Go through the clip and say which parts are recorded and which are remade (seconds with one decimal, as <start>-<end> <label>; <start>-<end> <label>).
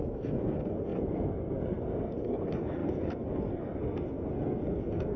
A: 0.0-5.2 remade